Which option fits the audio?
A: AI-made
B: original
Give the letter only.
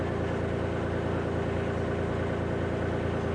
B